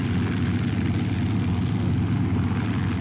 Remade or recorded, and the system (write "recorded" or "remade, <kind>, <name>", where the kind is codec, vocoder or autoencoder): recorded